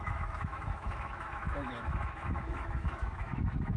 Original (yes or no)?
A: no